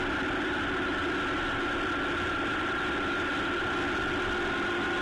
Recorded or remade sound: recorded